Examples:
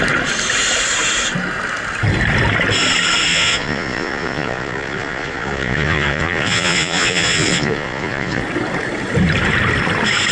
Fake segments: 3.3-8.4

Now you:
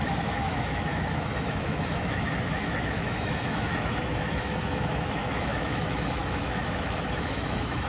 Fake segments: 0.0-7.9

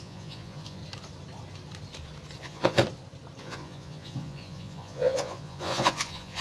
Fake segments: 0.0-0.8; 2.4-2.8; 3.4-6.4

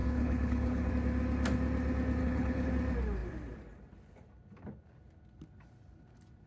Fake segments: 0.0-0.9; 2.2-2.7

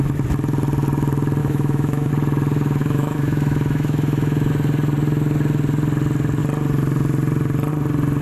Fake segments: 1.4-2.1; 2.8-4.5